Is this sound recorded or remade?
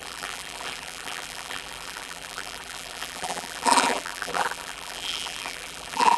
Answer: remade